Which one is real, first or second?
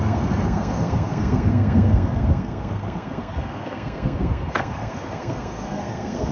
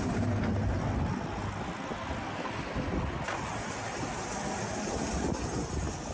second